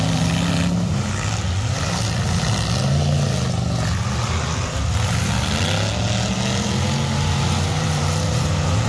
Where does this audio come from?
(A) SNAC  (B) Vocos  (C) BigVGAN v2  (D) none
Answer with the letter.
D